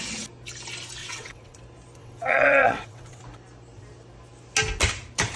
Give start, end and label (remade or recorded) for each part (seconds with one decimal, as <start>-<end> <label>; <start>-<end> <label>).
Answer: 0.0-1.0 recorded; 1.0-1.6 remade; 1.6-2.0 recorded; 2.0-3.2 remade; 3.2-5.4 recorded